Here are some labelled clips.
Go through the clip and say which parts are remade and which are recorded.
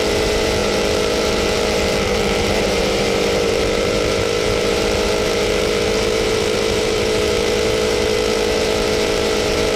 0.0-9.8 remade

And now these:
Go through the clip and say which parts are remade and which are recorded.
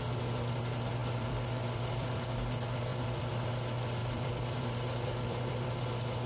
0.0-1.0 recorded; 1.0-2.2 remade; 2.2-2.9 recorded; 2.9-3.5 remade; 3.5-4.0 recorded; 4.0-5.8 remade; 5.8-6.3 recorded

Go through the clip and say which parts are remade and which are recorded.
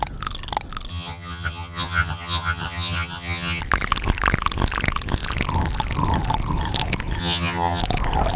0.0-0.9 recorded; 0.9-3.6 remade; 3.6-7.2 recorded; 7.2-7.8 remade; 7.8-8.4 recorded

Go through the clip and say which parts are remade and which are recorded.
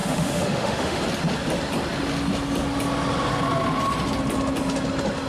0.0-1.0 remade; 1.0-5.3 recorded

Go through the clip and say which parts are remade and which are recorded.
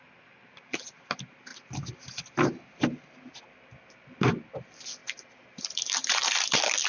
0.0-5.0 recorded; 5.0-6.5 remade; 6.5-6.9 recorded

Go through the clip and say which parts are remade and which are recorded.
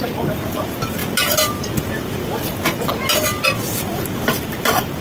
0.0-5.0 recorded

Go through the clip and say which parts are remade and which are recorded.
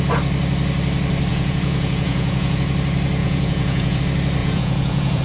0.0-1.3 recorded; 1.3-2.6 remade; 2.6-3.2 recorded; 3.2-4.0 remade; 4.0-4.4 recorded; 4.4-5.2 remade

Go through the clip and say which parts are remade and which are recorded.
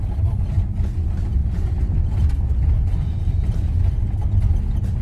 0.0-1.4 recorded; 1.4-4.0 remade; 4.0-5.0 recorded